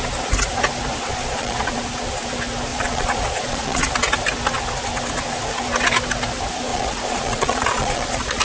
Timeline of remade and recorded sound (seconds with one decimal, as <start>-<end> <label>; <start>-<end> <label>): 0.0-1.1 recorded; 1.1-1.8 remade; 1.8-2.7 recorded; 2.7-3.8 remade; 3.8-6.7 recorded; 6.7-8.4 remade